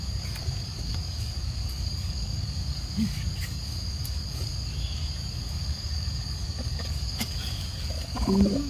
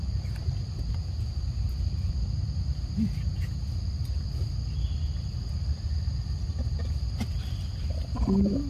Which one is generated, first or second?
first